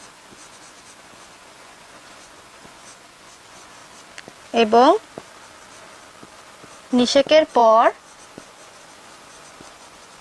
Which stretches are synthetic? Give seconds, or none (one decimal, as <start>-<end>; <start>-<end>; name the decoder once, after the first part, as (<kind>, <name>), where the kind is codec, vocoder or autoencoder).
0.0-3.8 (vocoder, Vocos); 6.6-10.2